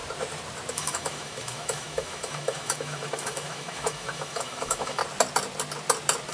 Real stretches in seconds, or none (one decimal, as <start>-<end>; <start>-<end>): 0.0-0.7; 5.0-6.3